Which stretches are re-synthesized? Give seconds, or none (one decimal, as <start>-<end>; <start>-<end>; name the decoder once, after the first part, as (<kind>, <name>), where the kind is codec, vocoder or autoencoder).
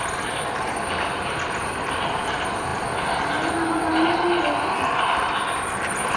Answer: none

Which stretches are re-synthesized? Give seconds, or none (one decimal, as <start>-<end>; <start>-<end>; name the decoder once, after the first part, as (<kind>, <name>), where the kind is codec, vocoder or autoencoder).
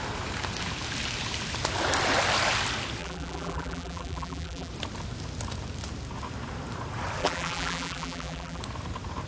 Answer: 3.0-4.7 (vocoder, BigVGAN v2); 7.2-8.6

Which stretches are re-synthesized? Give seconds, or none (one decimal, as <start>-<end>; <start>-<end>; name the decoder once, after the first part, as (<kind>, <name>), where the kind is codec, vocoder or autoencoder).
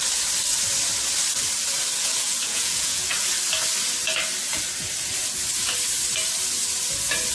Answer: 2.0-3.1 (vocoder, Vocos)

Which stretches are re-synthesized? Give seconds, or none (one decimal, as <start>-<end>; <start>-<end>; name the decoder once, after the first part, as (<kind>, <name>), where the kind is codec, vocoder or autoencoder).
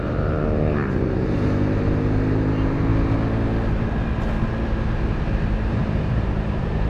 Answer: 0.0-2.9 (vocoder, BigVGAN v2); 5.7-6.9